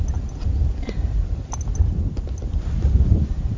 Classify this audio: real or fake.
real